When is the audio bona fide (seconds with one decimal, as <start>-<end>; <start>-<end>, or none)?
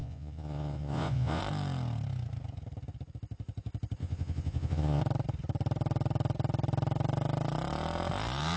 1.4-4.0; 5.0-8.6